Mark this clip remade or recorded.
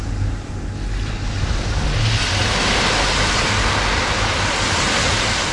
recorded